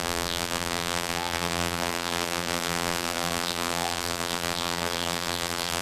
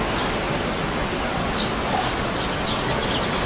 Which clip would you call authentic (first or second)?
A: second